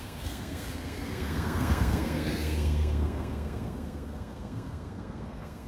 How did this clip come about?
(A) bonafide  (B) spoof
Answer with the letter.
B